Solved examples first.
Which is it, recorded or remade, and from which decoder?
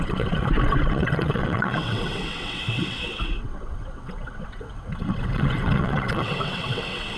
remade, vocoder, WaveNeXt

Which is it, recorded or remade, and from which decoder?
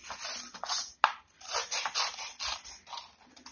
recorded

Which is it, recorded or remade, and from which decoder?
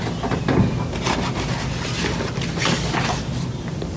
recorded